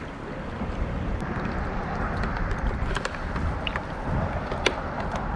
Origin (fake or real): fake